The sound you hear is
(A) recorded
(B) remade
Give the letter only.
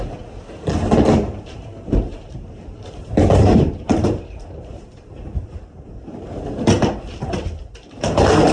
B